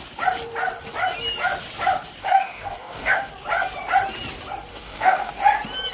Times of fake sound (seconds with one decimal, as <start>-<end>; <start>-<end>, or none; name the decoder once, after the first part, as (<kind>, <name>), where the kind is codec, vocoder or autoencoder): 2.2-3.3 (codec, DAC); 4.7-5.3